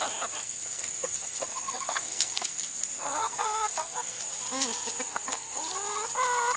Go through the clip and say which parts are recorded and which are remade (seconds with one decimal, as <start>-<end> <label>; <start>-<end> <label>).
0.0-0.4 recorded; 0.4-4.2 remade; 4.2-5.1 recorded; 5.1-5.6 remade; 5.6-6.6 recorded